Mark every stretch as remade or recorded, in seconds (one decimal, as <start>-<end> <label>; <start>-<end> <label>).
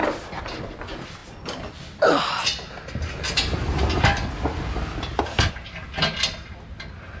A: 0.0-7.2 recorded